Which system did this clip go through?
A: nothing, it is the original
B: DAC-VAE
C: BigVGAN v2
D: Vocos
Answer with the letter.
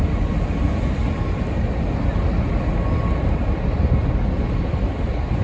A